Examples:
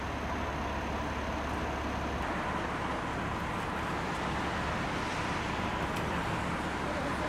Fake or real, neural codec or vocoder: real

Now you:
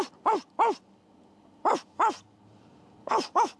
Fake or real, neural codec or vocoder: real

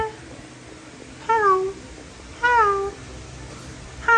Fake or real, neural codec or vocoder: real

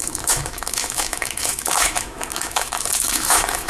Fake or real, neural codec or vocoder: fake, autoencoder, DAC-VAE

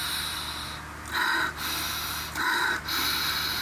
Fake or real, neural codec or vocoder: real